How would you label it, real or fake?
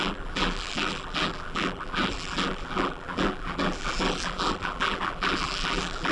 fake